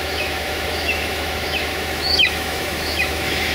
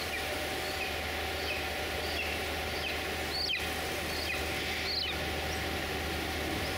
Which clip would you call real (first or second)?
second